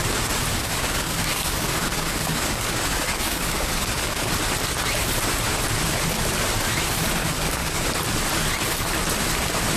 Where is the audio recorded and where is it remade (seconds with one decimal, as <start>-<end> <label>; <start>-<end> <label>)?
0.0-0.5 recorded; 0.5-4.3 remade; 4.3-7.2 recorded; 7.2-7.8 remade; 7.8-9.8 recorded